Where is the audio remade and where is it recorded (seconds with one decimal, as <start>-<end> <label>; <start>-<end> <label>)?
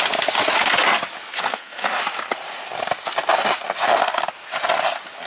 0.0-1.3 recorded; 1.3-2.0 remade; 2.0-5.3 recorded